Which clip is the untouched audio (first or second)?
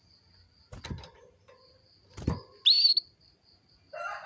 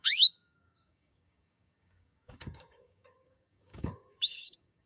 first